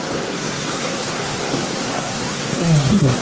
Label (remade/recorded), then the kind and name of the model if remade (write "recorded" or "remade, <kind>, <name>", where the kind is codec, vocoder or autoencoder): remade, codec, SNAC